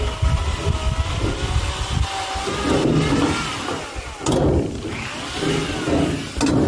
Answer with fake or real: real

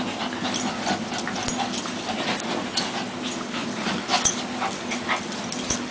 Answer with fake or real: real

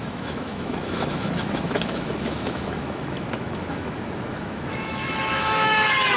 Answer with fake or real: fake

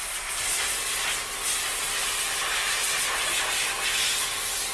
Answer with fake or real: real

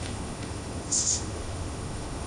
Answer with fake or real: fake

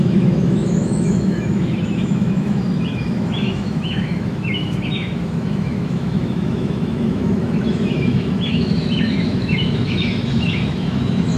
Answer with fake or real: fake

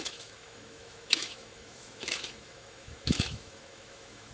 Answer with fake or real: fake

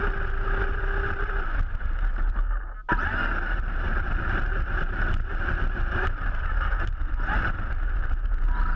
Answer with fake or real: real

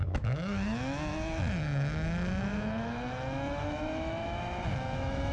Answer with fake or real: fake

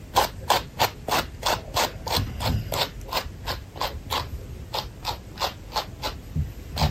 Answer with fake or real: real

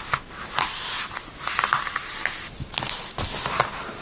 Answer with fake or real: real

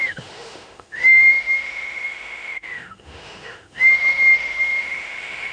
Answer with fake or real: fake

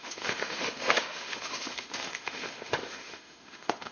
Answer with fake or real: fake